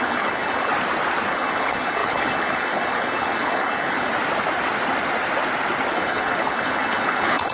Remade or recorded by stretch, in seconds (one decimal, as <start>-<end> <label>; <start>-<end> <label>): 0.0-0.7 remade; 0.7-1.3 recorded; 1.3-4.1 remade; 4.1-5.9 recorded; 5.9-7.5 remade